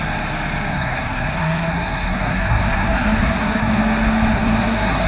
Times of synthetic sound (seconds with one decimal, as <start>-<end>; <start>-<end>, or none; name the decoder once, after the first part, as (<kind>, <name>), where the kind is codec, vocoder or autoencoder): 0.7-3.8 (codec, SNAC); 4.3-5.1